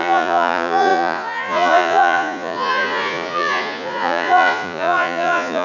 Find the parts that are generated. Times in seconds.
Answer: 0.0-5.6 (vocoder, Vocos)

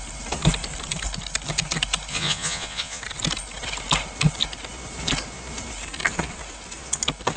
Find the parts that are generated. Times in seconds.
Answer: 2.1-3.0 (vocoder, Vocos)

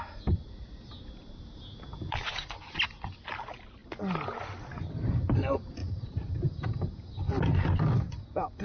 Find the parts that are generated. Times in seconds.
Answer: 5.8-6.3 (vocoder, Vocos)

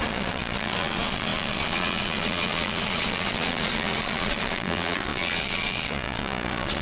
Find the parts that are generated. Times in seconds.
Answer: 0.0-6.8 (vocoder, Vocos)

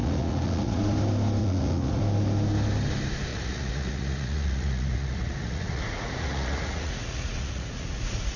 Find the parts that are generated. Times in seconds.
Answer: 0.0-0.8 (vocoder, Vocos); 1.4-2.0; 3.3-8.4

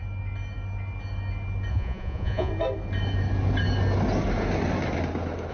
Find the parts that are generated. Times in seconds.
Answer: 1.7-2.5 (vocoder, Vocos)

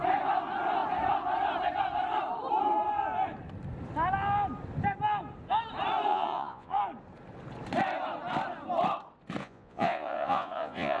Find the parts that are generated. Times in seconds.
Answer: 6.1-6.8 (vocoder, Vocos); 9.4-11.0